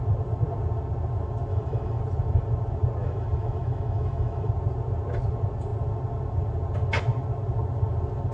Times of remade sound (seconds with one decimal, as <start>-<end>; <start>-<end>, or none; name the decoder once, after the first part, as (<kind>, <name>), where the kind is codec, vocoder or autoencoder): 1.5-2.0 (autoencoder, DAC-VAE); 3.0-4.5